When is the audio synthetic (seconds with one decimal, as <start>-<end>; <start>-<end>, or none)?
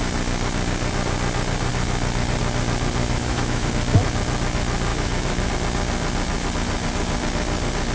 3.0-3.7; 4.9-5.5